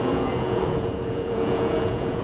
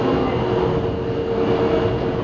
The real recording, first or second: second